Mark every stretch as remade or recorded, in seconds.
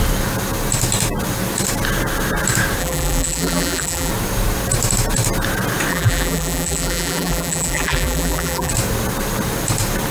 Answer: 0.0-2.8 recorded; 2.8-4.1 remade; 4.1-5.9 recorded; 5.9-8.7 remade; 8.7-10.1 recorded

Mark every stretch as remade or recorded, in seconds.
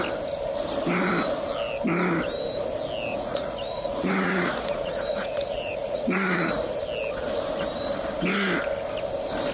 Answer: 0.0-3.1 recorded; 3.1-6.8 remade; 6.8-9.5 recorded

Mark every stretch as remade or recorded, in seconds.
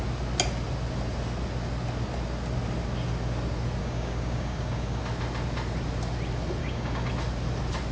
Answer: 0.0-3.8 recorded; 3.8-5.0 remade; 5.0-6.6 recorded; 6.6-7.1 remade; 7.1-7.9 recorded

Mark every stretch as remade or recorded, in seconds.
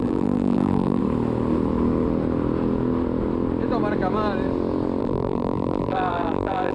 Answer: 0.0-1.0 remade; 1.0-5.0 recorded; 5.0-6.7 remade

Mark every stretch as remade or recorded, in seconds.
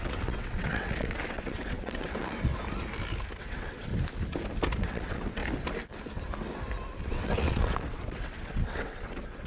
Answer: 0.0-2.5 remade; 2.5-3.4 recorded; 3.4-3.9 remade; 3.9-4.8 recorded; 4.8-5.4 remade; 5.4-7.0 recorded; 7.0-9.5 remade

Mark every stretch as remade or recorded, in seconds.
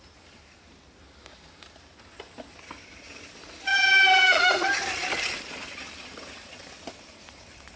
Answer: 0.0-3.7 recorded; 3.7-4.4 remade; 4.4-7.8 recorded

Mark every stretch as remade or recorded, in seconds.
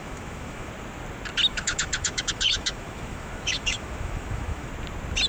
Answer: 0.0-0.7 remade; 0.7-1.5 recorded; 1.5-4.7 remade; 4.7-5.3 recorded